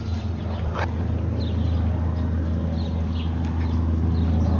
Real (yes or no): yes